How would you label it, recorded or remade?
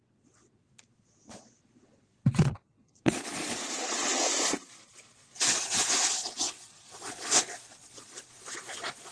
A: remade